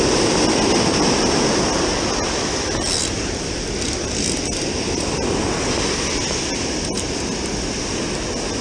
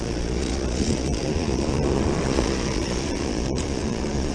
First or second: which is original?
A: first